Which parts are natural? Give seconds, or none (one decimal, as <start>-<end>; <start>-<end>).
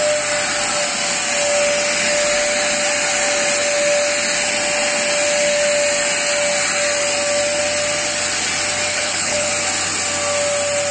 0.0-8.9; 9.5-10.9